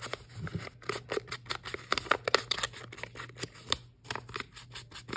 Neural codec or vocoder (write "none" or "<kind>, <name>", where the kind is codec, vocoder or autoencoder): none